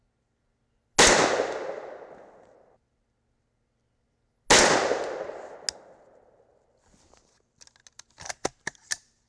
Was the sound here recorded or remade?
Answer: recorded